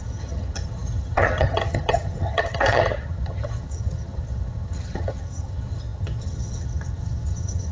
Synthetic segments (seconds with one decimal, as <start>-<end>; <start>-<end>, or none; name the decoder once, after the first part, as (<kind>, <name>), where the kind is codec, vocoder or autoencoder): 0.0-7.7 (vocoder, HiFi-GAN)